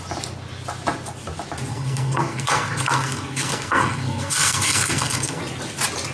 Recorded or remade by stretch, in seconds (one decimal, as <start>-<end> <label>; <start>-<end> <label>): 0.0-1.7 recorded; 1.7-5.4 remade; 5.4-6.1 recorded